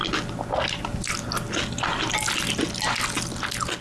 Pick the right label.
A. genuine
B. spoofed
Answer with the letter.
A